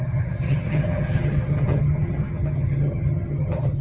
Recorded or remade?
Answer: remade